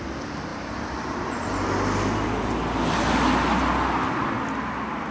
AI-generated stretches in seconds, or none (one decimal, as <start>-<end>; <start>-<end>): none